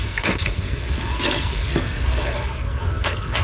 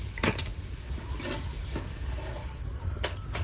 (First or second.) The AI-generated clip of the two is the first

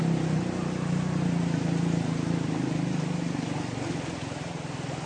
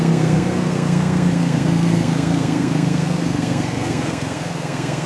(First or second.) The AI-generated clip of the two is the second